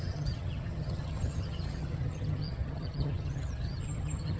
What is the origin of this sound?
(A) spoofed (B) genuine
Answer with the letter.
A